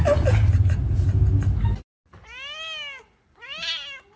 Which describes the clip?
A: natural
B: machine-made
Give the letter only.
A